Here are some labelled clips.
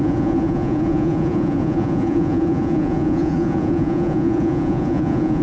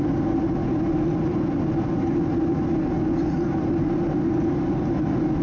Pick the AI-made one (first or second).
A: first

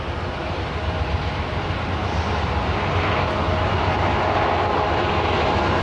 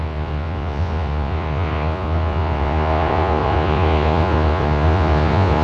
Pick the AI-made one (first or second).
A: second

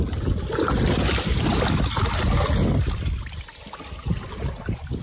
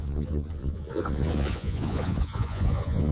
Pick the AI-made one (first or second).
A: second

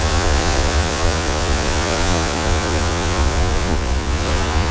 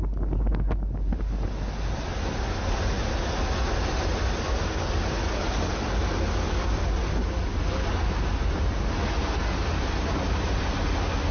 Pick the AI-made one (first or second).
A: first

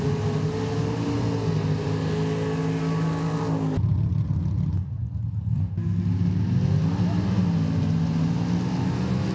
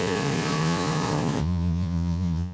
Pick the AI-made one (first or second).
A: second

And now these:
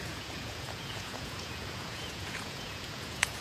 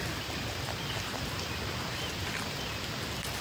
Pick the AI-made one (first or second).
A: first